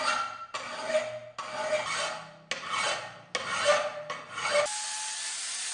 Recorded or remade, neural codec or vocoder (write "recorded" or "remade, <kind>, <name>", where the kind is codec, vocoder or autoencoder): recorded